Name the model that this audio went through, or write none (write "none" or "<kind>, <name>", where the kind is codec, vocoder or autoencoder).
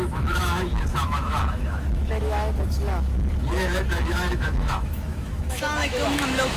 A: autoencoder, DAC-VAE